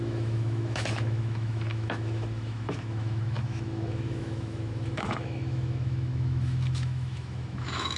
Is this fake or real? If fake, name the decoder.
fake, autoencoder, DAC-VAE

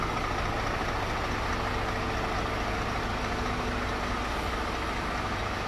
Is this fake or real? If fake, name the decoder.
real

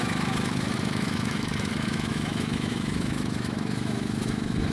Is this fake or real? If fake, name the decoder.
fake, autoencoder, DAC-VAE